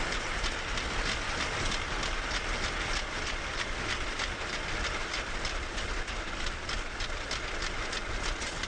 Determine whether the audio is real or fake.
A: real